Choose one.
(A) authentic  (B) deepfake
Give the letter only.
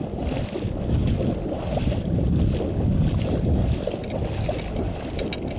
A